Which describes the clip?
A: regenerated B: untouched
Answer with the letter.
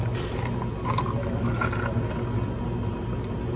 B